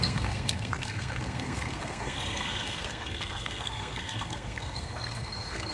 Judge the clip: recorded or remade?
remade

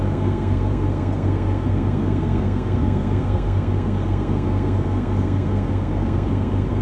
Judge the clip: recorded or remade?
remade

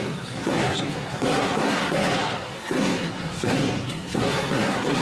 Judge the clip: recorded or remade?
remade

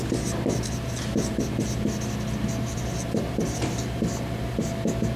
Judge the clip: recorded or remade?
recorded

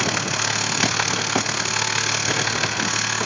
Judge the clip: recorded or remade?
remade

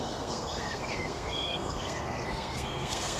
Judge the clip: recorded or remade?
remade